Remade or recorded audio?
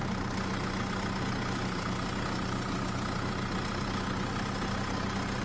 recorded